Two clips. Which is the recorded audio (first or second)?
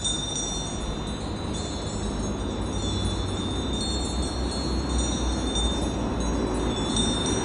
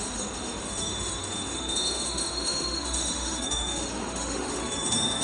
first